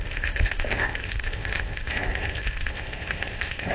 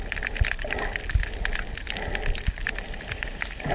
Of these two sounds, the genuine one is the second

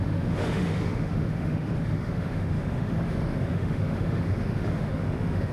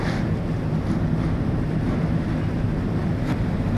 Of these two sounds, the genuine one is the second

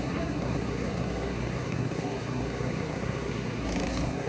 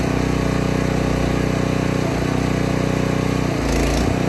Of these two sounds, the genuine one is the second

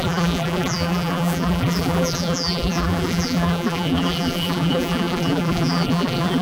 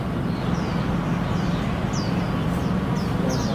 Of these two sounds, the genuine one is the second